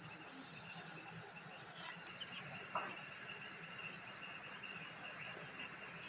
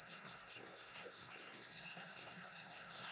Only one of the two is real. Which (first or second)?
first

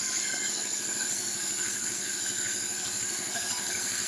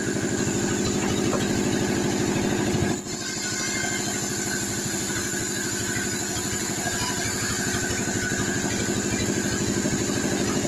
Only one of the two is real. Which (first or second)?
second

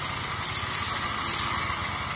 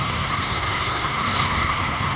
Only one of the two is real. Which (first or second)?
first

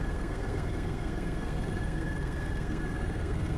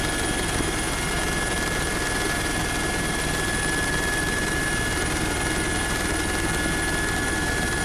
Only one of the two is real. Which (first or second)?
second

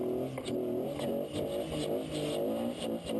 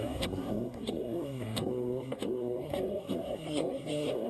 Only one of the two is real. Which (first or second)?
first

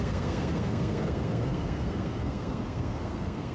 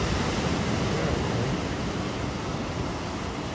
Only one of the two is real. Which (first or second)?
second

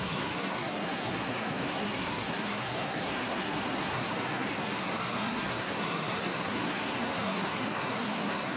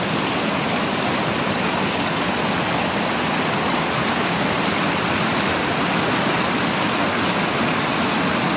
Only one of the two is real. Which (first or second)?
second